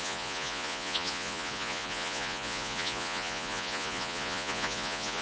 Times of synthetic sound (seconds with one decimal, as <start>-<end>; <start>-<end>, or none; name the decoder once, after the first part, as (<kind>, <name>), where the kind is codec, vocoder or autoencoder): 0.0-5.2 (vocoder, Vocos)